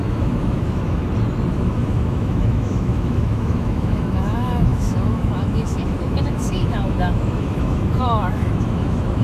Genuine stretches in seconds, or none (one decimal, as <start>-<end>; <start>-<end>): 1.0-1.5